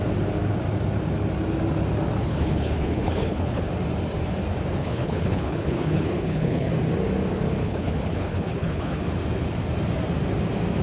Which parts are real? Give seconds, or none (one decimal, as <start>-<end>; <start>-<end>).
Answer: 0.0-2.2; 3.6-4.8; 6.7-7.6; 9.0-10.8